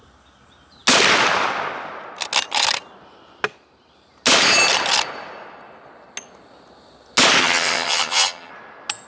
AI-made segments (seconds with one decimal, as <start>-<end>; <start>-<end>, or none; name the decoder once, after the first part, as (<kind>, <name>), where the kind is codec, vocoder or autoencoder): 7.4-8.5 (vocoder, HiFi-GAN)

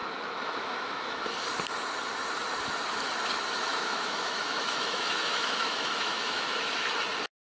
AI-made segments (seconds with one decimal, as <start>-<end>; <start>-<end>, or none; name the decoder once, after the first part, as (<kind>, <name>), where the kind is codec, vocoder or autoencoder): 0.0-1.2 (autoencoder, DAC-VAE); 3.7-6.7

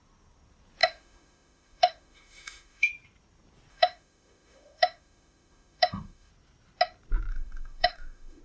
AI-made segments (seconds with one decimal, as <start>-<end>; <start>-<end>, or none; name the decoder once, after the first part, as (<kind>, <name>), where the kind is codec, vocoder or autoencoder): 0.8-2.9 (autoencoder, DAC-VAE); 3.7-6.3; 7.3-8.4